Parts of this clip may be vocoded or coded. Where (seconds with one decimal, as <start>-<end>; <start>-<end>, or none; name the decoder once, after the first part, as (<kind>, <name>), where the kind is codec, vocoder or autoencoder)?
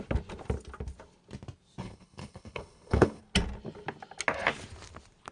1.8-3.2 (codec, HILCodec)